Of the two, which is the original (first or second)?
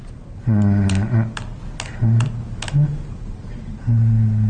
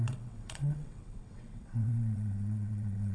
first